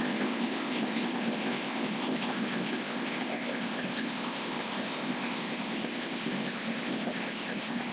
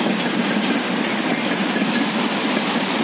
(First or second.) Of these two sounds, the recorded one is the second